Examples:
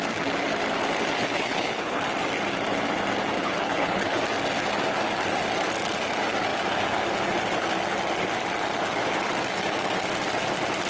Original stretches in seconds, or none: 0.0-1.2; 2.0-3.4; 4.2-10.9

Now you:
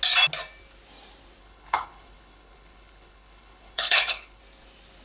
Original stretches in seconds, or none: 0.0-1.4; 4.4-5.0

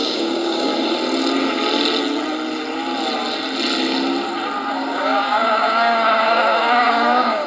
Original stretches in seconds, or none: 0.7-4.7

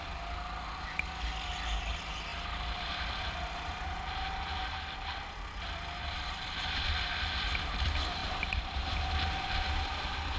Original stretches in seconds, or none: 0.0-2.3; 7.2-8.2; 8.9-10.4

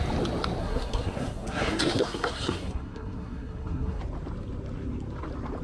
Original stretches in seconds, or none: 0.0-0.6; 4.0-5.6

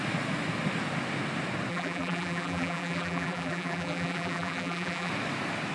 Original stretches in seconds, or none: 0.0-1.7; 5.1-5.7